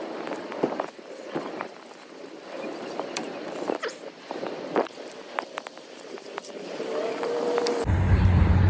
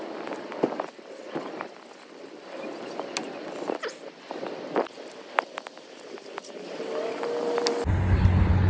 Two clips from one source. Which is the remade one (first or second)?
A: first